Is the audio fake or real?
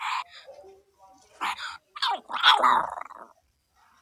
real